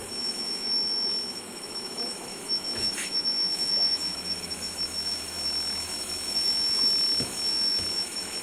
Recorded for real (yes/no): no